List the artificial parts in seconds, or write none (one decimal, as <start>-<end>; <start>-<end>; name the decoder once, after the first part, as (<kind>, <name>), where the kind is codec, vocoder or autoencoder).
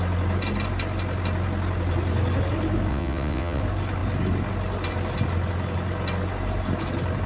2.9-3.6 (vocoder, WaveNeXt)